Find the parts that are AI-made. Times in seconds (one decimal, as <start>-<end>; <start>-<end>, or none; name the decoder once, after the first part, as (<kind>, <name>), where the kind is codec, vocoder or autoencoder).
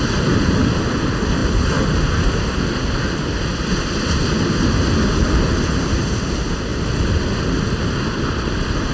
none